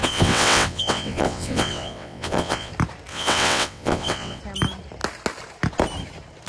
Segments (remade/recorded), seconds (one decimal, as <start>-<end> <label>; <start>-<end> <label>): 0.0-2.7 remade; 2.7-3.1 recorded; 3.1-4.4 remade; 4.4-6.5 recorded